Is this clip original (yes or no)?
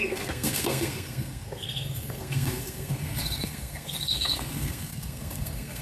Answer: no